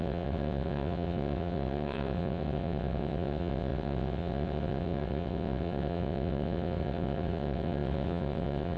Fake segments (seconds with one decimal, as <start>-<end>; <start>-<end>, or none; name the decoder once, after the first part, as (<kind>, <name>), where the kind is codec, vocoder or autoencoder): 0.0-8.8 (vocoder, WaveNeXt)